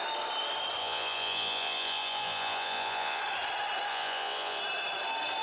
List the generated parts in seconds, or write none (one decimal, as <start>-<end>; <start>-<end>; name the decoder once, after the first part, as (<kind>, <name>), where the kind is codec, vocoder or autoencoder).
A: 0.8-3.2 (vocoder, Vocos); 3.9-4.6

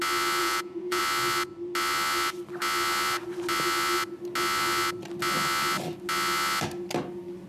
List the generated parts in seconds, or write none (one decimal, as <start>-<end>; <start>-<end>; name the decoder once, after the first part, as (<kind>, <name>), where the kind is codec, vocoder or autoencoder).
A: 0.4-1.0 (vocoder, Vocos)

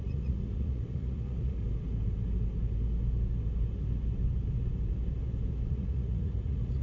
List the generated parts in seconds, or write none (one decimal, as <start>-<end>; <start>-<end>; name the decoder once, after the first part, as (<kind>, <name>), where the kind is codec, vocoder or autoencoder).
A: 0.0-1.6 (vocoder, Vocos); 5.7-6.8

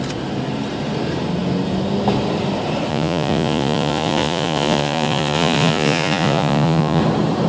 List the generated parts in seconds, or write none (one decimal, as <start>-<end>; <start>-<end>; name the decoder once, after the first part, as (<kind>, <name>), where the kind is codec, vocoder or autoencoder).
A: 2.9-7.0 (vocoder, Vocos)

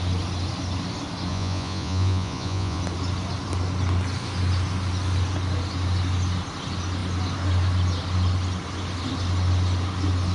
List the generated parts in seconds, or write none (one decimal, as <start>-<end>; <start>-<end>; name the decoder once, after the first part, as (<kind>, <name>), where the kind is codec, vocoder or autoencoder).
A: 1.3-2.8 (vocoder, Vocos)

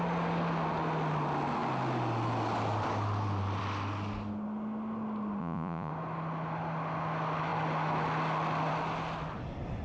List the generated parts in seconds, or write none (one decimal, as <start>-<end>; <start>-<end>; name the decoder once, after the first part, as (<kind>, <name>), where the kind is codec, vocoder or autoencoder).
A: 5.4-5.9 (vocoder, Vocos)

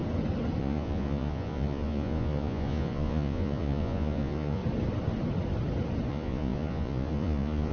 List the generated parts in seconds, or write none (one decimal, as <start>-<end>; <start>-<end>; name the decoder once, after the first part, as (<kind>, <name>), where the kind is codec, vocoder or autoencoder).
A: 0.6-4.6 (vocoder, Vocos); 6.1-7.7